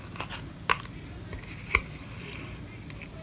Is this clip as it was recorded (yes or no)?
yes